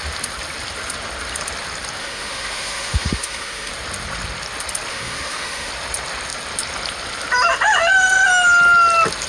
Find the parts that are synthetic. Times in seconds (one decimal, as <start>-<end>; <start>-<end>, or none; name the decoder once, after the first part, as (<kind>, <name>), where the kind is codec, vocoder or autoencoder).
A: 2.0-3.7 (autoencoder, DAC-VAE); 4.9-5.7